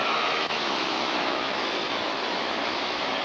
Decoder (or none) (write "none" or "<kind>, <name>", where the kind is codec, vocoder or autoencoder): autoencoder, DAC-VAE